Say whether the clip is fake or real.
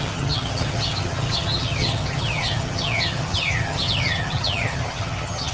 fake